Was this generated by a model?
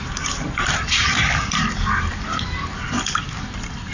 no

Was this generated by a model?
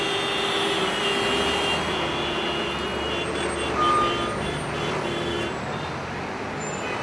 no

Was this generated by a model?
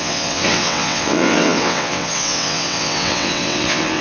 yes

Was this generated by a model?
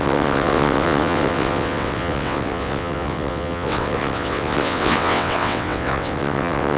yes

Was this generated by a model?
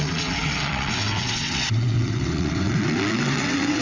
yes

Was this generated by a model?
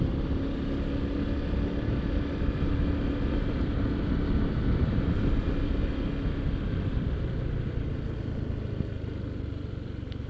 no